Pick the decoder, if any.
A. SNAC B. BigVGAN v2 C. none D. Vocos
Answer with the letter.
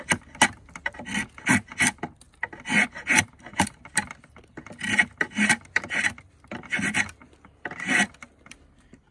C